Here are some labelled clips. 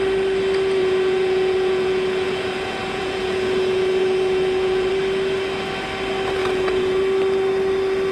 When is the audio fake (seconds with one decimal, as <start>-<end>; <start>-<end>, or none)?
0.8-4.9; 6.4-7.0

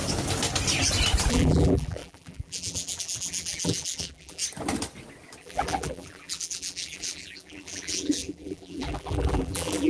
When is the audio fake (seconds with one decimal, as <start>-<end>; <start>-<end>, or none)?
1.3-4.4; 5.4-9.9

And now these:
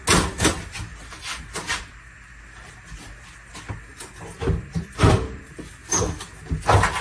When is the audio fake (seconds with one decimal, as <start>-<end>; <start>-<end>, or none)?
none

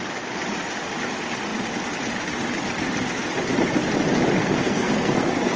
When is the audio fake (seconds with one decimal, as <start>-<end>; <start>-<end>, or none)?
4.4-5.6

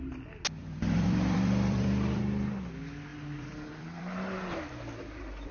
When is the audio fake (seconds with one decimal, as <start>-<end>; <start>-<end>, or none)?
0.6-2.2; 3.1-4.0

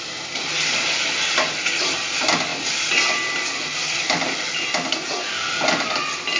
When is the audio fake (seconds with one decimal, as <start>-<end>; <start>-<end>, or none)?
none